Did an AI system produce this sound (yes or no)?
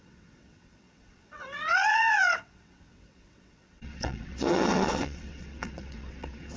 yes